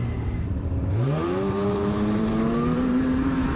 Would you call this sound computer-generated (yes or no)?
yes